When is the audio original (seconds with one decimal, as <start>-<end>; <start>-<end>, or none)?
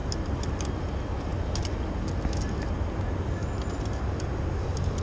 0.0-5.0